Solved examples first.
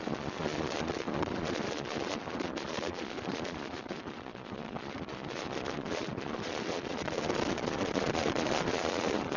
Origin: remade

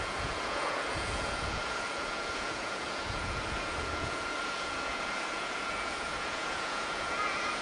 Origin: remade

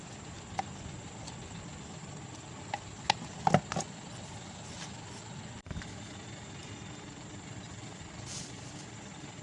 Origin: recorded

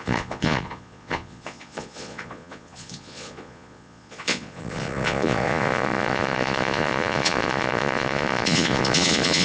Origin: remade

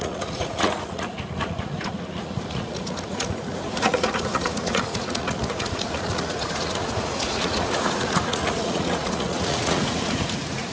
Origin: remade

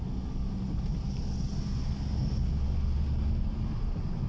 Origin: recorded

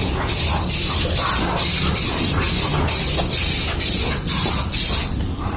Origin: recorded